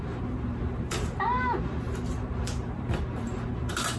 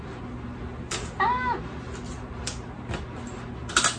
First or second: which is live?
second